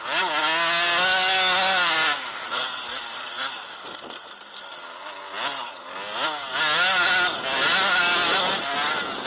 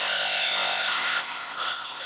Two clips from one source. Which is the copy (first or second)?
second